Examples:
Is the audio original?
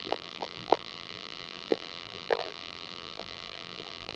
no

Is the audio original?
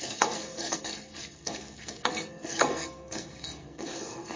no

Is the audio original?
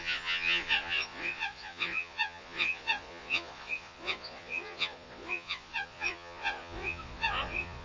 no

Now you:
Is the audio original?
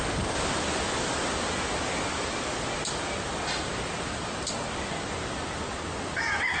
yes